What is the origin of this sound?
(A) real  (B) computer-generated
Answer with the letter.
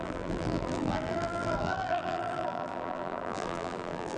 B